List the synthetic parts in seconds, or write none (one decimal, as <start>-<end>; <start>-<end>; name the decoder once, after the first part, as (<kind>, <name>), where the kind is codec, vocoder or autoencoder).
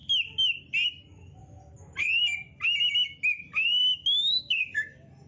3.8-5.3 (codec, DAC)